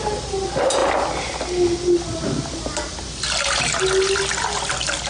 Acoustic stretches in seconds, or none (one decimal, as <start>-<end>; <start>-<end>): 0.0-5.1

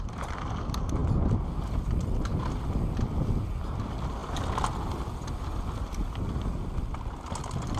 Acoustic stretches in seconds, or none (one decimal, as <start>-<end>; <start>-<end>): 0.0-7.8

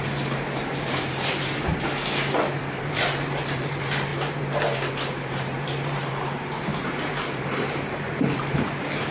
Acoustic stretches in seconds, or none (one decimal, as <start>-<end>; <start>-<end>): 1.7-2.6

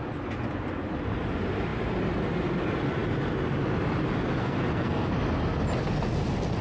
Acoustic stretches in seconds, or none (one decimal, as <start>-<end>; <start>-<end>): 0.0-4.4; 5.1-6.6

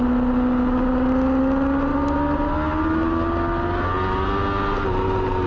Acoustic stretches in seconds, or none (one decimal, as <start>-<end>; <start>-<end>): 0.0-5.5

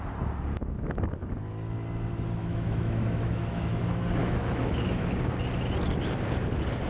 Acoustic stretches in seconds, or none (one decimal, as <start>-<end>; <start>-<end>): 0.0-2.4; 3.8-4.2; 5.1-6.9

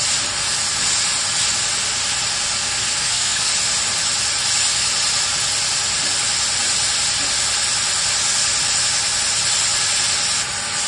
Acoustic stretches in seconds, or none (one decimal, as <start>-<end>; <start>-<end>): 0.0-2.6; 3.5-10.9

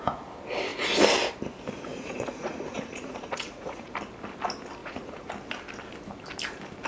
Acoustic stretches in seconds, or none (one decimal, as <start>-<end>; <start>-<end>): 0.0-1.9; 3.9-4.8; 5.3-6.9